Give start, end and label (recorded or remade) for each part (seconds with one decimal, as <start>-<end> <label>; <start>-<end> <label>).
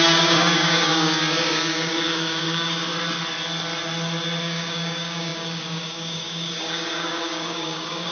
0.0-2.9 remade; 2.9-4.4 recorded; 4.4-8.1 remade